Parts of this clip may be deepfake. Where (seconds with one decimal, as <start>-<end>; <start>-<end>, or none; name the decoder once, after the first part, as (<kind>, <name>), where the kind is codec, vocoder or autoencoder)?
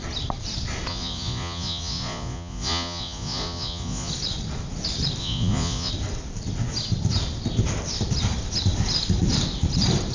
0.9-4.1 (vocoder, Vocos); 5.2-5.9